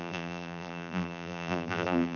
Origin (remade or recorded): remade